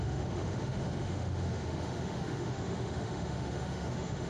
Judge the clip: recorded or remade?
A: remade